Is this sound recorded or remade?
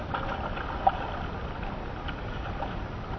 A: recorded